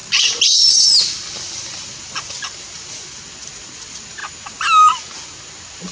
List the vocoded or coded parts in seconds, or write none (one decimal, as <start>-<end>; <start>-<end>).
none